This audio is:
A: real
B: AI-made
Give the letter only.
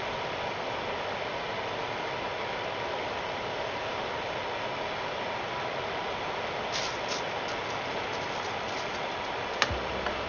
A